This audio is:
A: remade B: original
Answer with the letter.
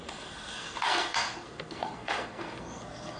A